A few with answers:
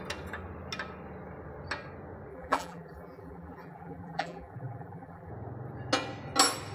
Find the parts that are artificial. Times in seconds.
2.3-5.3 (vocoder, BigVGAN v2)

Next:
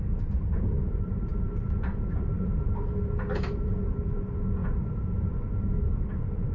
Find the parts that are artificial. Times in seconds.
0.0-6.5 (vocoder, BigVGAN v2)

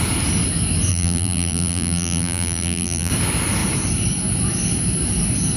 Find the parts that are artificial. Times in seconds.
0.9-3.1 (vocoder, BigVGAN v2)

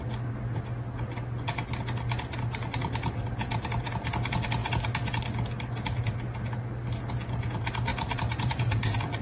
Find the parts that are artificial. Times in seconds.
7.9-8.6 (vocoder, BigVGAN v2)

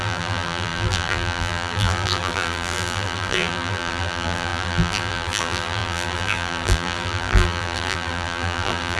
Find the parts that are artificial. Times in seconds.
0.0-9.0 (vocoder, BigVGAN v2)

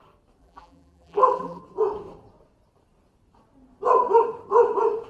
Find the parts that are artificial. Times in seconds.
0.4-1.6 (vocoder, BigVGAN v2)